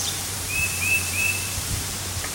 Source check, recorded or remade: remade